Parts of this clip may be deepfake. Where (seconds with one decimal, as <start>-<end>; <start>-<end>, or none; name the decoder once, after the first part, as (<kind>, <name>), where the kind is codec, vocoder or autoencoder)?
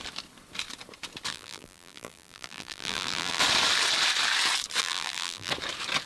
1.3-3.4 (vocoder, BigVGAN v2); 4.8-5.5